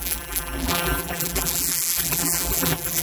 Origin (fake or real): fake